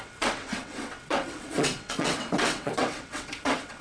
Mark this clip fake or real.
fake